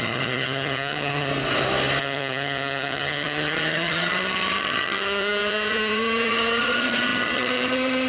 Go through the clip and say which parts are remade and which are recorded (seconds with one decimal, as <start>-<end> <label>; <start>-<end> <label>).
0.0-1.3 remade; 1.3-2.0 recorded; 2.0-8.1 remade